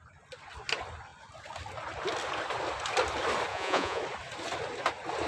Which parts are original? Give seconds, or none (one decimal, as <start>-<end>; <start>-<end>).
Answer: 0.0-3.5; 4.0-5.3